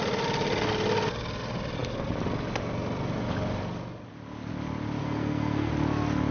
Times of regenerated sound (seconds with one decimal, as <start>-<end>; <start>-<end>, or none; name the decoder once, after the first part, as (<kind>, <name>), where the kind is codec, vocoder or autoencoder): 5.0-5.7 (codec, SNAC)

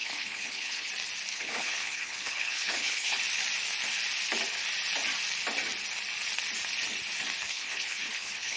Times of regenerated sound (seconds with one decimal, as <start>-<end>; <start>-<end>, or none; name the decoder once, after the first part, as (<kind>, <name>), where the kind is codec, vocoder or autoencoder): 0.0-0.9 (codec, HILCodec); 1.3-3.2; 7.5-8.6

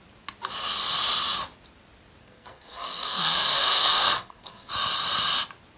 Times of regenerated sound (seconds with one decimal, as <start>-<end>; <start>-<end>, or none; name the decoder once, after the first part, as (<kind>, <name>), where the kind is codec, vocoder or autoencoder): 2.2-4.7 (codec, SNAC)

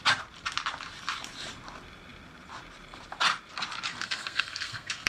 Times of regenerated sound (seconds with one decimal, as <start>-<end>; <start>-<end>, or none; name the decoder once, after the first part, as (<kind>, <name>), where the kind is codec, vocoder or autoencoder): 3.9-5.1 (codec, SNAC)

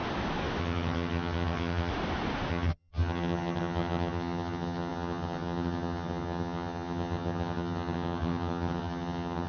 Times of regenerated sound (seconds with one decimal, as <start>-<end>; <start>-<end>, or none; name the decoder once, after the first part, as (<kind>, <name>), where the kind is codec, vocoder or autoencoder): 0.6-1.9 (vocoder, HiFi-GAN); 2.5-9.5

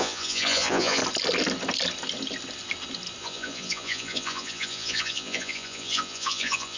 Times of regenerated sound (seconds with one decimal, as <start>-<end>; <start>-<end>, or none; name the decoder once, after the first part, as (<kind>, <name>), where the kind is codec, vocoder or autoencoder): 0.0-1.0 (vocoder, Vocos); 3.2-6.8

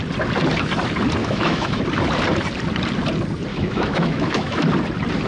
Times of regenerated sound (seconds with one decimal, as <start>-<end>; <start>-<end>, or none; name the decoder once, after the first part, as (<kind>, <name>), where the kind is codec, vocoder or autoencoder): 1.2-1.8 (autoencoder, DAC-VAE); 3.5-4.6